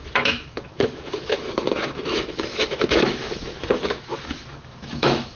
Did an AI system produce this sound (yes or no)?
yes